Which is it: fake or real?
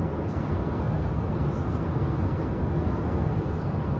fake